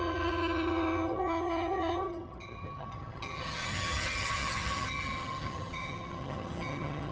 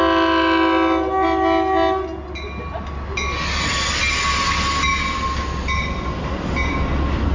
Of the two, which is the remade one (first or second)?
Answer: first